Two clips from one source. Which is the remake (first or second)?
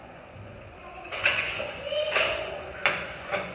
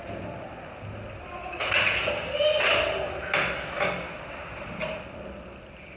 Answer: first